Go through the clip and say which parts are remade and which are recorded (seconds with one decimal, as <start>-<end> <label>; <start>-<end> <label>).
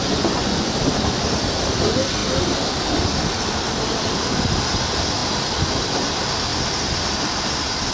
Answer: 0.0-0.7 remade; 0.7-7.9 recorded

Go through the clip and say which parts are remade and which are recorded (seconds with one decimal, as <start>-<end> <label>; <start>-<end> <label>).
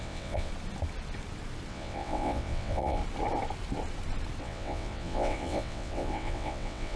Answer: 0.0-0.5 remade; 0.5-1.7 recorded; 1.7-3.0 remade; 3.0-4.4 recorded; 4.4-7.0 remade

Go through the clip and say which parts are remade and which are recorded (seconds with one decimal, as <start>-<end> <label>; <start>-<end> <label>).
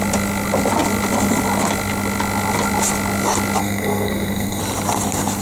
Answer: 0.0-3.6 recorded; 3.6-4.6 remade; 4.6-5.4 recorded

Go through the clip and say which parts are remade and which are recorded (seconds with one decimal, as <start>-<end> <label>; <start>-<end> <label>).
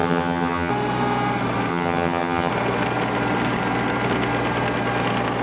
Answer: 0.0-0.7 remade; 0.7-1.7 recorded; 1.7-2.5 remade; 2.5-5.4 recorded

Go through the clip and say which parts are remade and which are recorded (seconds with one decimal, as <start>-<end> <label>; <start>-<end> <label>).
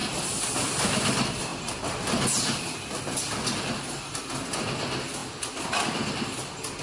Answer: 0.0-6.8 recorded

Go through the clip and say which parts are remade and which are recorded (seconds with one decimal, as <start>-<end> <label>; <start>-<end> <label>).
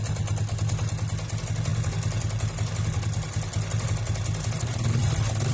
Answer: 0.0-5.5 recorded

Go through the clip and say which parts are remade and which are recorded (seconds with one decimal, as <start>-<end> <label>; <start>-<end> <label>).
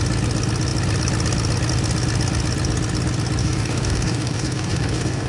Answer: 0.0-3.4 recorded; 3.4-5.3 remade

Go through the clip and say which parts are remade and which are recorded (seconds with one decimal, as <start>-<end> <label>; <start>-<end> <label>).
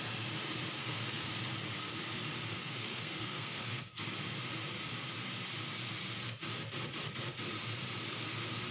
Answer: 0.0-0.8 recorded; 0.8-1.3 remade; 1.3-2.6 recorded; 2.6-4.0 remade; 4.0-8.7 recorded